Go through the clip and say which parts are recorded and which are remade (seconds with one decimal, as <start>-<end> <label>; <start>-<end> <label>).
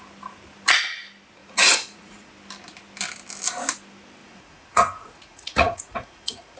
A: 0.0-1.4 recorded; 1.4-2.3 remade; 2.3-4.2 recorded; 4.2-6.6 remade